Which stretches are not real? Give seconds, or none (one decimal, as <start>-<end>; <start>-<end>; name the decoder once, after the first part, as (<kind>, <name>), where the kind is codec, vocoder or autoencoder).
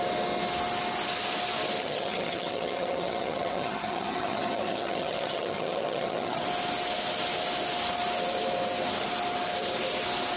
1.8-6.4 (vocoder, HiFi-GAN)